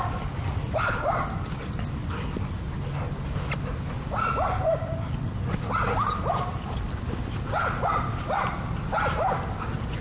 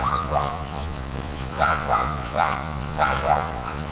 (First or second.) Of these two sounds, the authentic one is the first